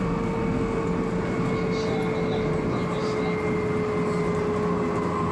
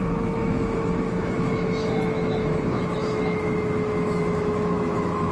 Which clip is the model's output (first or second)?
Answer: second